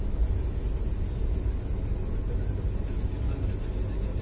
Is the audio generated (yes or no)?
no